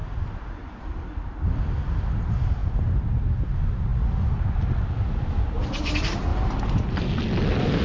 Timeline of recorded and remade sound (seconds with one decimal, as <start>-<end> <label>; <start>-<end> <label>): 0.0-0.8 remade; 0.8-6.3 recorded; 6.3-7.1 remade; 7.1-7.8 recorded